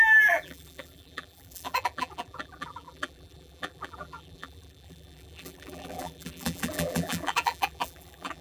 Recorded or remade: remade